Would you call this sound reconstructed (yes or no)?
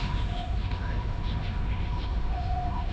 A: yes